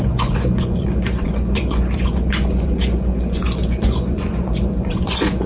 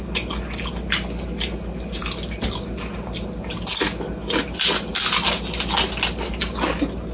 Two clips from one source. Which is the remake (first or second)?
first